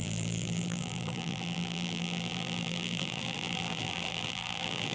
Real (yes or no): no